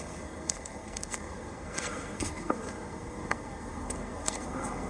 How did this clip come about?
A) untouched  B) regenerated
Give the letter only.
B